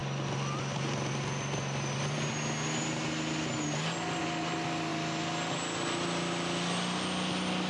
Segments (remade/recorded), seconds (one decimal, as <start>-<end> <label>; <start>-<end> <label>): 0.0-7.7 recorded